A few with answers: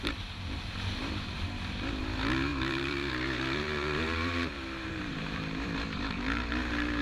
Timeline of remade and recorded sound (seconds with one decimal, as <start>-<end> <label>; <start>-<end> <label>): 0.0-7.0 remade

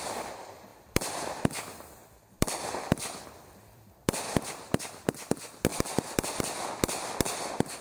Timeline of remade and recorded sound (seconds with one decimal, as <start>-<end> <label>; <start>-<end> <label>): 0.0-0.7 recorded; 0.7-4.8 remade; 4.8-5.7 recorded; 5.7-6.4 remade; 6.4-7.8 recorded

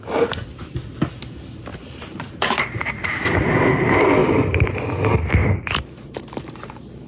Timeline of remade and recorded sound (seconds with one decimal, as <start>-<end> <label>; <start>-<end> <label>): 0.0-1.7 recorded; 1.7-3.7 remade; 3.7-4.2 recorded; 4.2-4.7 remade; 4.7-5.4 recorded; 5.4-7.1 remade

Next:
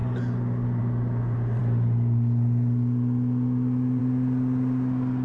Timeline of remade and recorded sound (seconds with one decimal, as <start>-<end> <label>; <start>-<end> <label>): 0.0-5.2 recorded